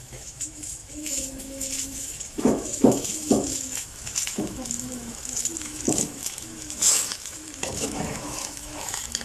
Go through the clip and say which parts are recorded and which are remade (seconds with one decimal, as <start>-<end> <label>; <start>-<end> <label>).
0.0-9.2 remade